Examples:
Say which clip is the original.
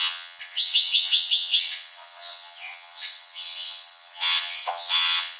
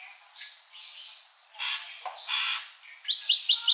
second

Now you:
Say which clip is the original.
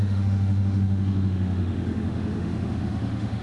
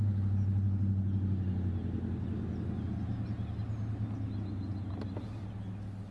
second